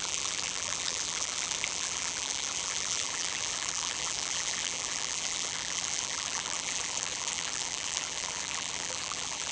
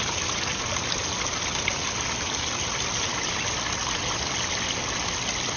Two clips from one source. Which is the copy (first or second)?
first